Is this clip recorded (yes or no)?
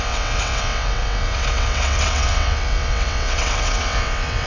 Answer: no